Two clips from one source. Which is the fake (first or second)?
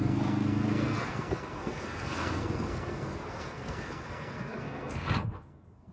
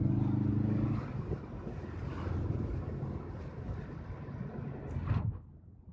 first